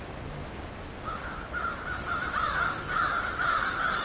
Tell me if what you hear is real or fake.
fake